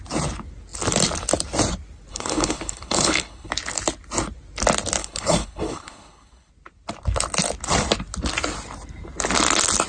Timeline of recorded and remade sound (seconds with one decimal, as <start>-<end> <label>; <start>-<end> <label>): 0.0-2.1 recorded; 2.1-3.5 remade; 3.5-5.0 recorded; 5.0-6.5 remade; 6.5-9.9 recorded

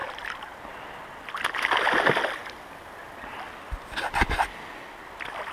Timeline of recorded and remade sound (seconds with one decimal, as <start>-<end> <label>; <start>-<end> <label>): 0.0-5.5 recorded